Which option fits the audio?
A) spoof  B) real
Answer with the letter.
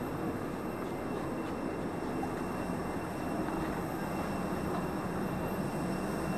B